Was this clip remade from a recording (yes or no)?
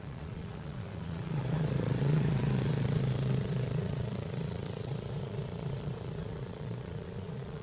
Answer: yes